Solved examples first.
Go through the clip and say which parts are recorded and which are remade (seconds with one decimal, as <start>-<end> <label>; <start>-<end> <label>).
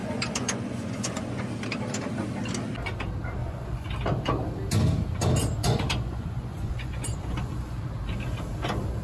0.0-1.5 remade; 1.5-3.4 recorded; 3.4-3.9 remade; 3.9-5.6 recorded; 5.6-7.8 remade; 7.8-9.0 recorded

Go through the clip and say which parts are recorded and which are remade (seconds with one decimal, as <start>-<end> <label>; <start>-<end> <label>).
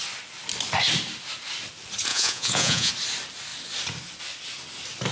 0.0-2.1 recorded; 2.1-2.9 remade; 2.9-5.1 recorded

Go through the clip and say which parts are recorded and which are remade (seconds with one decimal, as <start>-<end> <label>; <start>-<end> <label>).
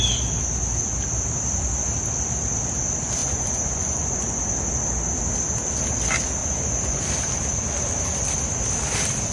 0.0-3.2 recorded; 3.2-4.4 remade; 4.4-6.4 recorded; 6.4-7.0 remade; 7.0-9.3 recorded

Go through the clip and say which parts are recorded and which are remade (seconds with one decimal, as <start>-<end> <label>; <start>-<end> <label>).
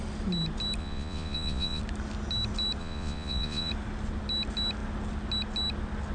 0.0-0.8 recorded; 0.8-1.8 remade; 1.8-2.8 recorded; 2.8-3.7 remade; 3.7-6.1 recorded